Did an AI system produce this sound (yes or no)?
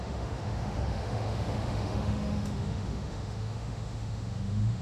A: yes